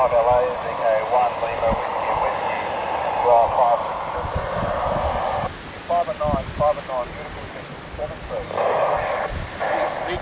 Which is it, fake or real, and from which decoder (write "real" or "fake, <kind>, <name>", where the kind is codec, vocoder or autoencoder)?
real